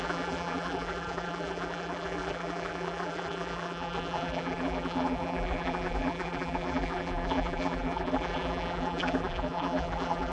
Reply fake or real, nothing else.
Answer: fake